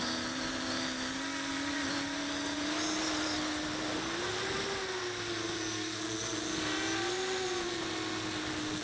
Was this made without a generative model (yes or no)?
yes